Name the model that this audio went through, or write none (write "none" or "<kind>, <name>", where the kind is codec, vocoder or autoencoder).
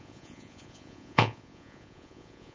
vocoder, Vocos